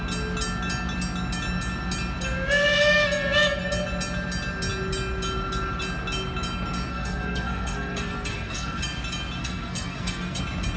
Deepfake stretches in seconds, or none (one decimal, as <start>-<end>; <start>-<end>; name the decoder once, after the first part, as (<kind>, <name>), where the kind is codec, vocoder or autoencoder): 6.9-8.8 (codec, SNAC); 9.4-10.4